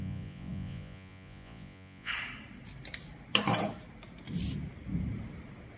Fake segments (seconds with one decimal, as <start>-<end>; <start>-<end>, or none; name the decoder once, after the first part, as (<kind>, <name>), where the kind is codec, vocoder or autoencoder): 0.0-2.1 (vocoder, Vocos)

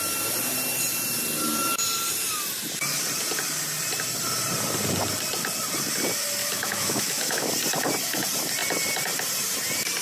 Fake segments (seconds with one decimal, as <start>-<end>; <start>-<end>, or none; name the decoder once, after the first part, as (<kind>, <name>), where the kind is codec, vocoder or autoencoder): 6.4-7.5 (autoencoder, DAC-VAE)

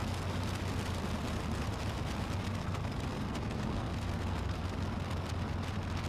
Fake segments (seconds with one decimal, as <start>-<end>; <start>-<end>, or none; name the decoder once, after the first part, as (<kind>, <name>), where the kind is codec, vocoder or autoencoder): 2.5-4.6 (codec, SNAC)